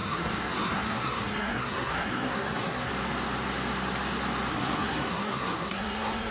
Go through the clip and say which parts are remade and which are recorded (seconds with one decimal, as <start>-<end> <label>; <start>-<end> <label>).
0.0-2.9 remade; 2.9-4.5 recorded; 4.5-6.3 remade